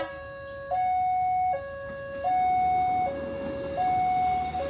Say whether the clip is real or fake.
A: real